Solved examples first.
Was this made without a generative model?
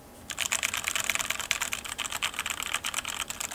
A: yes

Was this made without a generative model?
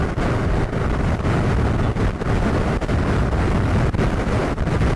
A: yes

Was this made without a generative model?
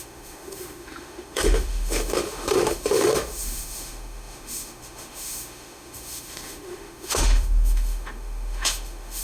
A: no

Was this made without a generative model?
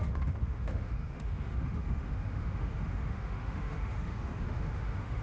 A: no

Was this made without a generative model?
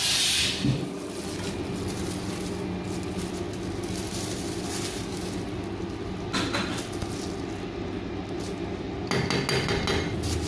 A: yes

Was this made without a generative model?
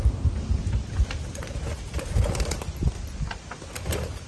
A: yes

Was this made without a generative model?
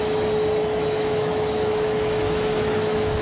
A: no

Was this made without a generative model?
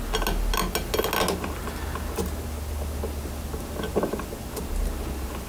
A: yes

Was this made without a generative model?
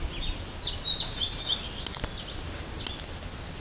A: yes